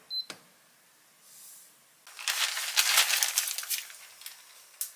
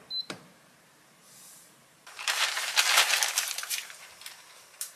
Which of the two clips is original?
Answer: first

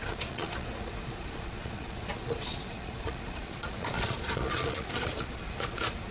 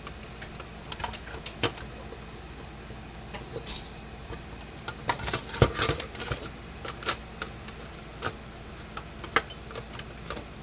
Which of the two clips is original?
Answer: second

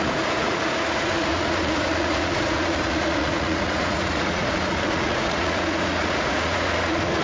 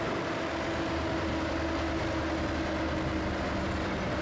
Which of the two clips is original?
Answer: second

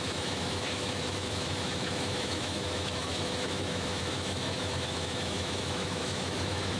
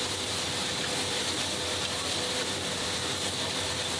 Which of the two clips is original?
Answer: second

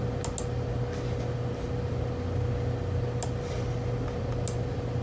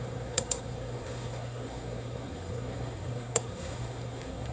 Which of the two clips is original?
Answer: first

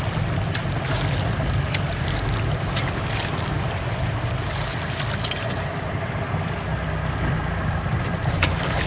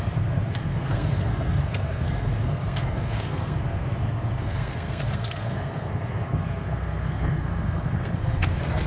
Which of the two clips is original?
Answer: first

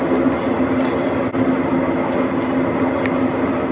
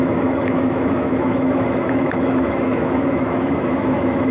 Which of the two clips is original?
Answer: first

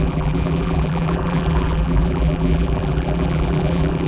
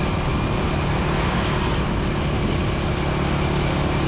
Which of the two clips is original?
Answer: second